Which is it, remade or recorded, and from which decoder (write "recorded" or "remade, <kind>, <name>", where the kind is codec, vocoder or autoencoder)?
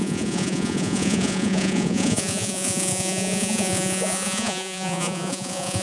remade, vocoder, Vocos